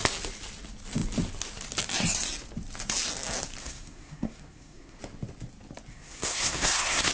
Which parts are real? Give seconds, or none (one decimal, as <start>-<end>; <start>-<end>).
0.0-3.6; 5.0-5.9